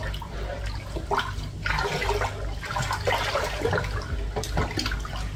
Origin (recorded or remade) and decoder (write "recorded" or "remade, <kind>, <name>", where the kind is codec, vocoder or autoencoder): recorded